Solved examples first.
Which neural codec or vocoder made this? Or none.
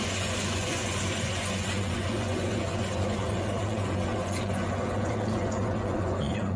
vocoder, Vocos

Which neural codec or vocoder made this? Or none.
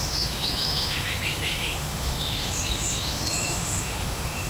autoencoder, DAC-VAE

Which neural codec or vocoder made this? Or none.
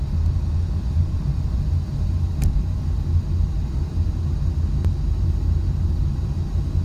none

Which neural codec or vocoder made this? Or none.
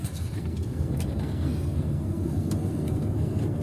codec, SNAC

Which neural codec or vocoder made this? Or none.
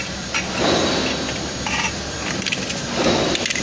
none